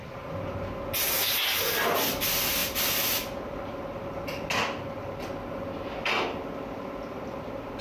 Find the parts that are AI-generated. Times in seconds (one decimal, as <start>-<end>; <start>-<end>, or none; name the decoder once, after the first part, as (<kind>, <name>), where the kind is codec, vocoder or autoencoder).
none